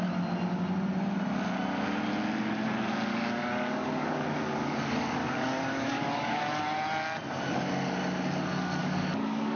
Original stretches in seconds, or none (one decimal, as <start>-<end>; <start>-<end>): 0.0-3.1; 6.4-8.8